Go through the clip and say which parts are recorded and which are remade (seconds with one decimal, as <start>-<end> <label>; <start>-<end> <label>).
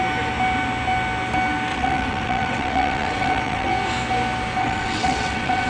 0.0-1.7 recorded; 1.7-3.7 remade; 3.7-4.6 recorded; 4.6-5.7 remade